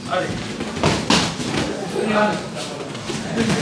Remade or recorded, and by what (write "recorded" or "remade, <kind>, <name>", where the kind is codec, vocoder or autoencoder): recorded